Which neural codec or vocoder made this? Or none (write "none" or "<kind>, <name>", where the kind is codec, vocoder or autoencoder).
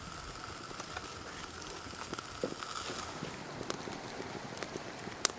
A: none